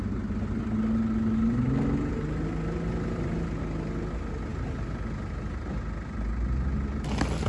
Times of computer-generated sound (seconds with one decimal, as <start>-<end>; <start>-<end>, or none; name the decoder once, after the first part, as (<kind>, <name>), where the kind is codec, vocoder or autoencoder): none